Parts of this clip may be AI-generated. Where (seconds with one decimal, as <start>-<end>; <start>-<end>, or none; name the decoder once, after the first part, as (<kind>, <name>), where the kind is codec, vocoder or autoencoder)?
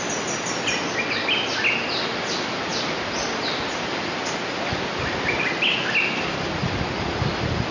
none